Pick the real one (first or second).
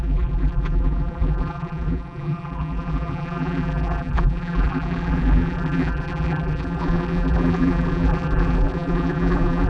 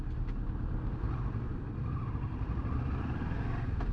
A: second